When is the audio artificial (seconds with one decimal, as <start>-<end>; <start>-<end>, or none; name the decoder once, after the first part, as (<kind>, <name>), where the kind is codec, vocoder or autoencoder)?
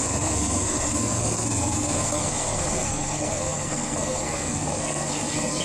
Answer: 0.0-5.6 (codec, SNAC)